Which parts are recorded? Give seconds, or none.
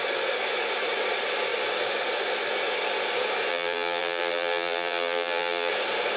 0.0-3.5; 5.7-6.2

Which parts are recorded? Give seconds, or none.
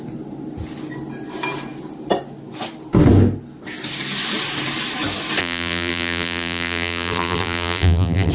0.0-5.4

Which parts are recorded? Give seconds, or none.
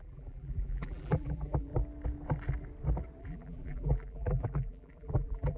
1.7-3.2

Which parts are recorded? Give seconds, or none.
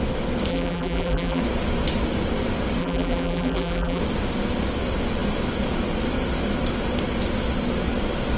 0.0-0.5; 1.4-2.8; 4.0-8.4